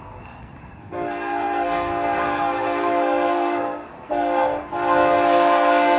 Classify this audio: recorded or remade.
remade